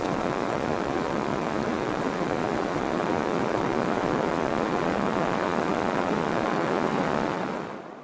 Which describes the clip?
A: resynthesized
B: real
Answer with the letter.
A